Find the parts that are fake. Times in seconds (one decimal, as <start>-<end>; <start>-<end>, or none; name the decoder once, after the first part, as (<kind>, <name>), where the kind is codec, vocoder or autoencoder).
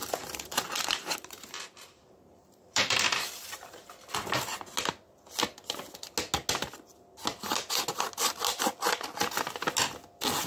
0.0-4.1 (vocoder, BigVGAN v2)